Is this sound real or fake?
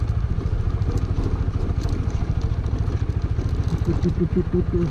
real